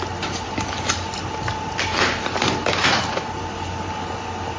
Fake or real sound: real